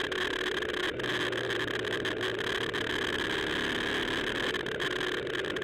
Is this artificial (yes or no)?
no